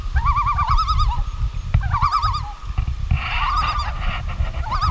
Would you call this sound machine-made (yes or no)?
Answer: no